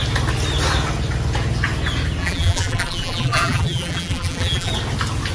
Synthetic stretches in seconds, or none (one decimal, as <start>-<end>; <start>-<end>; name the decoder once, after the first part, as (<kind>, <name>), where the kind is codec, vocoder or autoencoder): 2.2-4.7 (vocoder, BigVGAN v2)